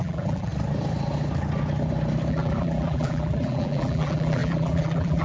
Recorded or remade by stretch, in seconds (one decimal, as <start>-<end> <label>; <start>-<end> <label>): 0.0-0.5 remade; 0.5-2.3 recorded; 2.3-5.2 remade